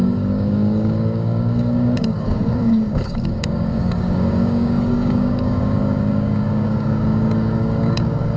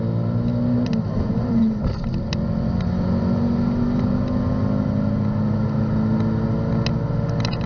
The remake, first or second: first